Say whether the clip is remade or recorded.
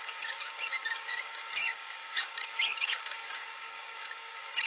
remade